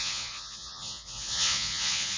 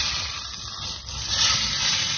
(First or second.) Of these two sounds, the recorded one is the second